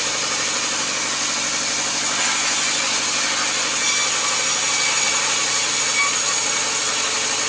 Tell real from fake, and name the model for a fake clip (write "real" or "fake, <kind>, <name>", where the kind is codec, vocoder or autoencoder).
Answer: real